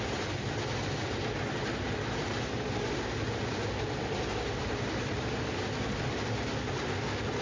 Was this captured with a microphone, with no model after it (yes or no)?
yes